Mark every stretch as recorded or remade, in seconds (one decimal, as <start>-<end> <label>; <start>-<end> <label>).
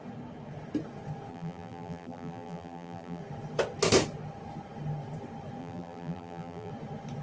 0.0-1.3 recorded; 1.3-3.2 remade; 3.2-5.6 recorded; 5.6-6.7 remade; 6.7-7.2 recorded